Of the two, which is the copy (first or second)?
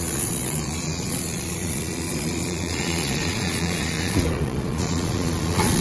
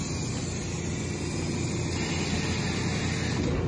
first